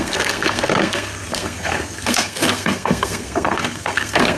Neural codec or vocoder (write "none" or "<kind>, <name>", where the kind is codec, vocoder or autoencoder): codec, SNAC